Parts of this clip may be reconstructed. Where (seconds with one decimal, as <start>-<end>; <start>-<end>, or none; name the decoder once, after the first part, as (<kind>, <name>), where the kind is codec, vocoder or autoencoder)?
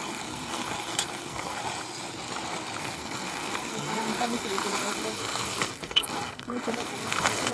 0.0-1.6 (codec, SNAC); 2.8-7.5